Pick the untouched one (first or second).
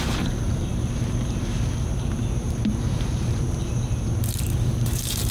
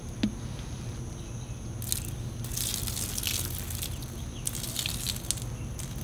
second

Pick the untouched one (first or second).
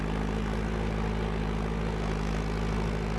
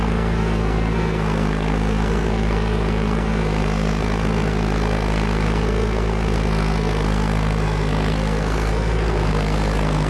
first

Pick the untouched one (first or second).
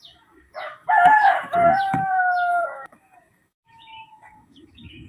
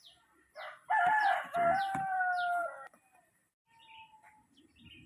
second